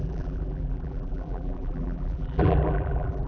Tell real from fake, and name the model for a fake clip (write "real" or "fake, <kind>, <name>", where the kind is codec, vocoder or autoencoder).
fake, vocoder, BigVGAN v2